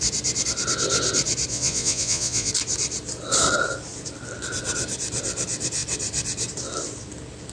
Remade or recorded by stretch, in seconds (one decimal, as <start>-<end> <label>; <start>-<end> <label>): 0.0-1.5 recorded; 1.5-2.5 remade; 2.5-7.5 recorded